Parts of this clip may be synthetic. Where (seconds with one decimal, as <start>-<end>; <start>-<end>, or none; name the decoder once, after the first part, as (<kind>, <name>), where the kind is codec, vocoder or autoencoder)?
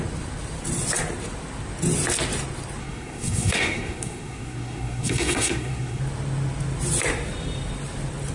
2.8-6.0 (codec, SNAC)